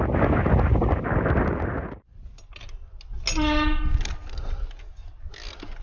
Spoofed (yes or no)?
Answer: no